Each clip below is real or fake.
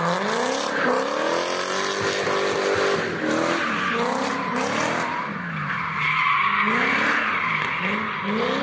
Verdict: real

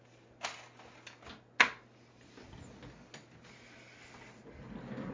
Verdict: real